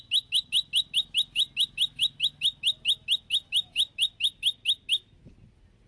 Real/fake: real